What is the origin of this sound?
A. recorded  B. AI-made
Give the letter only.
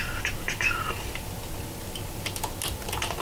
A